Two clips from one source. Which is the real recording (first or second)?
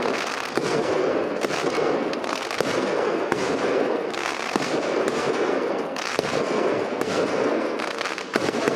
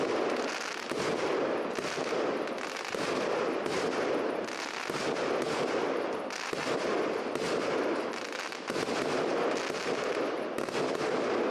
second